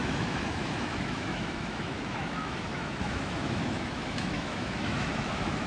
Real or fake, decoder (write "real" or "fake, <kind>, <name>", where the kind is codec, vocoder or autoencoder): fake, autoencoder, DAC-VAE